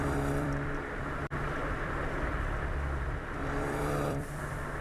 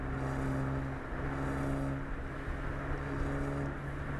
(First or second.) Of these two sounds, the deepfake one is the first